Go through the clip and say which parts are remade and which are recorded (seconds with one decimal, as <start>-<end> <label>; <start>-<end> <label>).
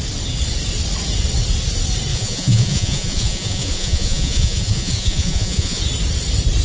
0.0-2.1 recorded; 2.1-5.8 remade; 5.8-6.6 recorded